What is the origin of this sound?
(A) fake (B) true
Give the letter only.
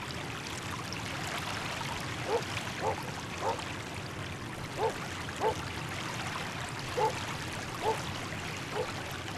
B